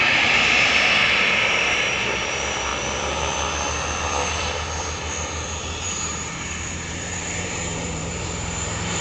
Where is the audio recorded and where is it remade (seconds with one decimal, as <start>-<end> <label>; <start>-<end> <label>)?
0.0-2.7 remade; 2.7-5.8 recorded; 5.8-9.0 remade